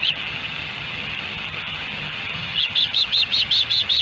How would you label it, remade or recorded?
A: remade